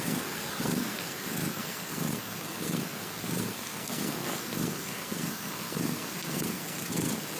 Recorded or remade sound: remade